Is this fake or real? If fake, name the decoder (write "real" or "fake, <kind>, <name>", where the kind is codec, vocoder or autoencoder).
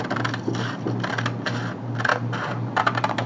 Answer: real